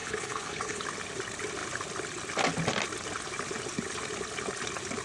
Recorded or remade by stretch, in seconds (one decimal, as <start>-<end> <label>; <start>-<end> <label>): 0.0-0.8 remade; 0.8-5.0 recorded